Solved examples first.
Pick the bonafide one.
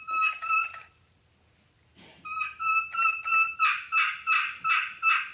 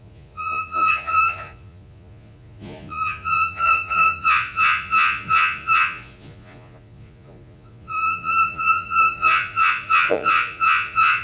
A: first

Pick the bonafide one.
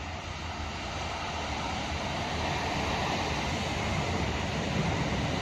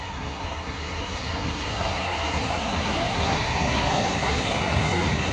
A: first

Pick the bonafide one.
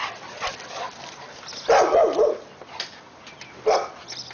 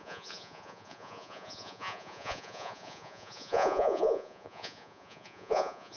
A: first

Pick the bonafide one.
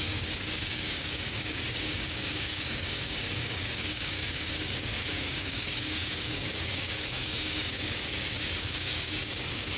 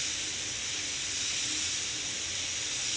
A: second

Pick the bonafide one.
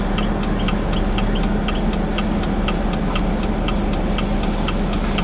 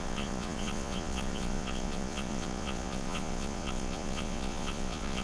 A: first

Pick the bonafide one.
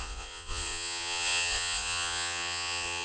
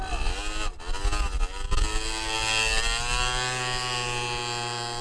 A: second